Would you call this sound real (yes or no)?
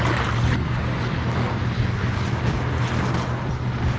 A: yes